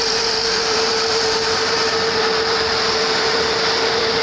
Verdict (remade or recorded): remade